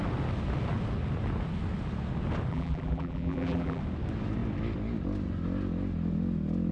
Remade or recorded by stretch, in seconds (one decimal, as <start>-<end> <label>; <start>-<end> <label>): 0.0-2.5 recorded; 2.5-3.8 remade; 3.8-6.7 recorded